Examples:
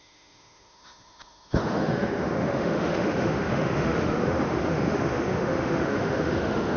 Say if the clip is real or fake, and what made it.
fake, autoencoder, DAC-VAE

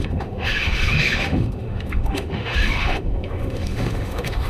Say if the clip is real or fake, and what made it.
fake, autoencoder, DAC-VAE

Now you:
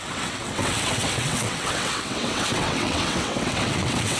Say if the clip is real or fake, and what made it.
fake, vocoder, WaveNeXt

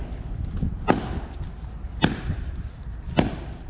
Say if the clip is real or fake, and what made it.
real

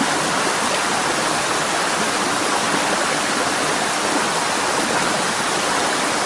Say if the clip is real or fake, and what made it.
real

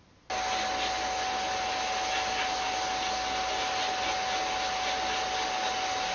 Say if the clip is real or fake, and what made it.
real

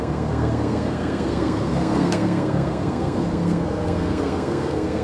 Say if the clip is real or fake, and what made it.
fake, codec, SNAC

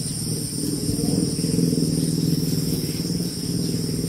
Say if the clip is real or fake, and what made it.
real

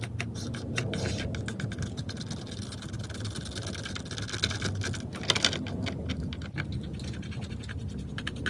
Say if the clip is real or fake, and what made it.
real